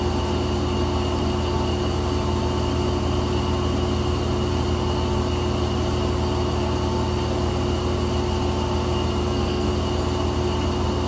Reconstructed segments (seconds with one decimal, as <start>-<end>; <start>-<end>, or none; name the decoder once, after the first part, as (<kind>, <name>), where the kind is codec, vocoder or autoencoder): 9.2-9.7 (codec, SNAC)